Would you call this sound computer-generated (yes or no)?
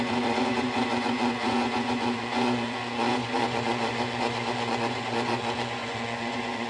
yes